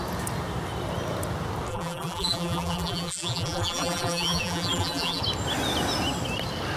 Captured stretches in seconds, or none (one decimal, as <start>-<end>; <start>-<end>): 0.0-1.7; 5.2-6.8